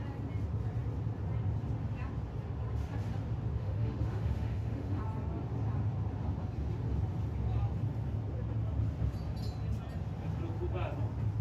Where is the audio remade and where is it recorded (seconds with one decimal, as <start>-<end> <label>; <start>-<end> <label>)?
0.0-3.6 recorded; 3.6-5.0 remade; 5.0-11.4 recorded